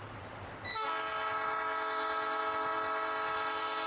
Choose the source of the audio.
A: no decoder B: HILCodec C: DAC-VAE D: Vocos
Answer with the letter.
A